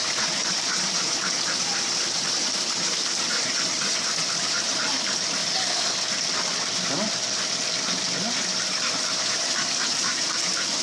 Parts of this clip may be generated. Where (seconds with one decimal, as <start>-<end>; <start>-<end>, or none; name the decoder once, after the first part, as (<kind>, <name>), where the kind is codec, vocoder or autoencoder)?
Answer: 0.0-5.4 (vocoder, BigVGAN v2); 8.9-10.8